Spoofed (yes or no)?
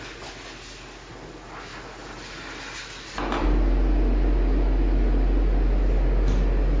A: no